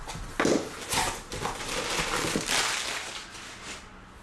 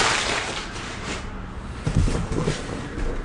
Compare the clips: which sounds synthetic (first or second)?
second